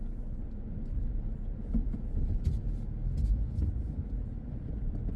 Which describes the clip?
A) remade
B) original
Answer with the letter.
B